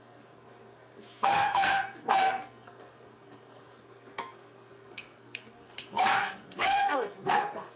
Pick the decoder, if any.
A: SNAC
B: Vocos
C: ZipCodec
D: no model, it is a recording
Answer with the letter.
A